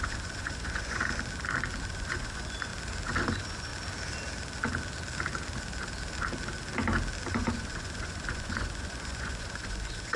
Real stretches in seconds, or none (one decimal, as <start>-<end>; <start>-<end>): 1.0-1.8; 2.7-3.3; 3.7-7.3